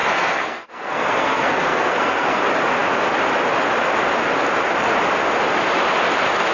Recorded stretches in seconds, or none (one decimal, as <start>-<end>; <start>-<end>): 2.4-6.5